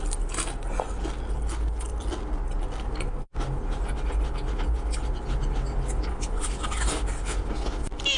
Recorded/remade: recorded